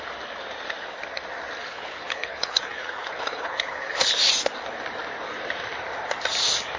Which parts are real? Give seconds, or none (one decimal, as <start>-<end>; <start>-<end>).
0.0-1.6; 4.1-6.8